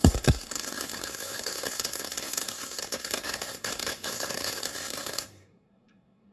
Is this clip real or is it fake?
fake